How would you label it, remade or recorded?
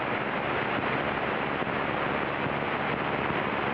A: recorded